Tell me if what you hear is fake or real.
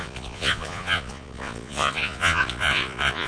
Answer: fake